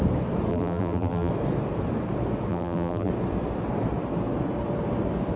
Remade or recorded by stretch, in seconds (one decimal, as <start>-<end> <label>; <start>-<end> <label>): 0.0-0.5 recorded; 0.5-1.3 remade; 1.3-2.5 recorded; 2.5-3.1 remade; 3.1-5.4 recorded